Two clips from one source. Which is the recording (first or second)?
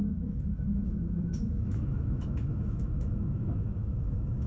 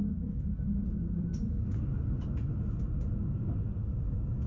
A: second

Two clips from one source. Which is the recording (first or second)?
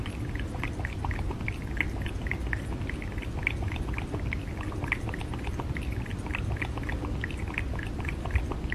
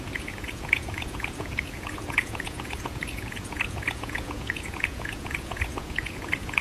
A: first